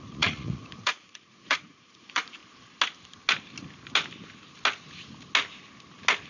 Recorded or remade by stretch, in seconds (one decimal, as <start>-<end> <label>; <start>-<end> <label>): 0.0-2.4 remade; 2.4-6.3 recorded